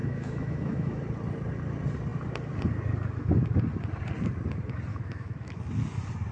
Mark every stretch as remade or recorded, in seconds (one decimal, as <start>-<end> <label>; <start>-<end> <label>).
0.0-1.0 remade; 1.0-4.9 recorded; 4.9-5.6 remade; 5.6-6.3 recorded